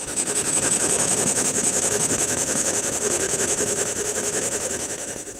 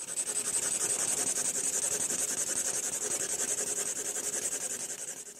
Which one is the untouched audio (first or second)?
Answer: second